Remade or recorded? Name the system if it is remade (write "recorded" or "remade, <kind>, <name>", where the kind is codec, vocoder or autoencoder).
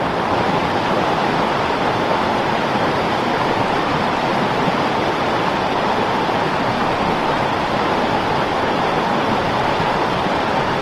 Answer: recorded